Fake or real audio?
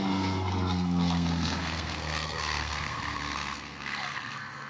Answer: fake